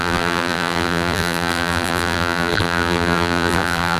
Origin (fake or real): fake